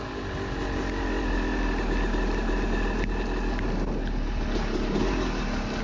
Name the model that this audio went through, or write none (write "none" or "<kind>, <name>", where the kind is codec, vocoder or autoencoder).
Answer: none